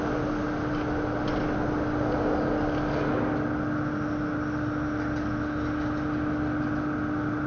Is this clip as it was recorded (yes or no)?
yes